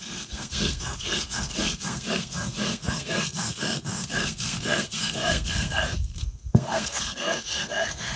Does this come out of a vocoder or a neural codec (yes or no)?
yes